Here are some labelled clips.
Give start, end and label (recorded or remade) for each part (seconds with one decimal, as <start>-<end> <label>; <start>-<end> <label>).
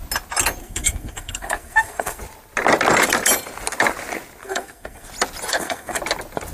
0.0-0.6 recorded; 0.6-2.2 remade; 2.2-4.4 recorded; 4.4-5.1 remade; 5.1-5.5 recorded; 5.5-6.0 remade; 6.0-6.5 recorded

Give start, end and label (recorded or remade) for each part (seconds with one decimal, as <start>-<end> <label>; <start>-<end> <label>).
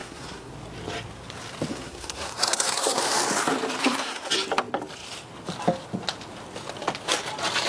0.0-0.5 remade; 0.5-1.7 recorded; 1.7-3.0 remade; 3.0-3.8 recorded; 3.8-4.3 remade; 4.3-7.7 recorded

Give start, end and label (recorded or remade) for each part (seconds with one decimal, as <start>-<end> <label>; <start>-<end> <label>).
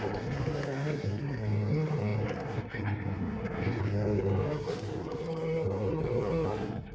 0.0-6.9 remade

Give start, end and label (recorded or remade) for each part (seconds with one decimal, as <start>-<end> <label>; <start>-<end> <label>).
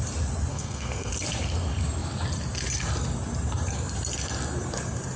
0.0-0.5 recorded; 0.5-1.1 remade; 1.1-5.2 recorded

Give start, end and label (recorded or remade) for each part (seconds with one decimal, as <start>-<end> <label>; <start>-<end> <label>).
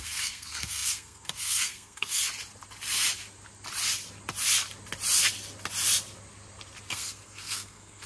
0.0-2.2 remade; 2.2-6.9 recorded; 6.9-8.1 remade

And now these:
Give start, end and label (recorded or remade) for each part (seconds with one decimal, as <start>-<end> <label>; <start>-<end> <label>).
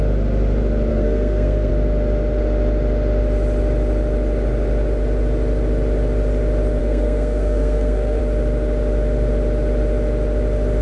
0.0-0.9 recorded; 0.9-1.7 remade; 1.7-6.8 recorded; 6.8-8.2 remade; 8.2-10.8 recorded